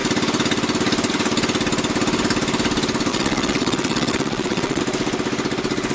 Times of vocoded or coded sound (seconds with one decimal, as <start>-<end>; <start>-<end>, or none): 3.1-4.8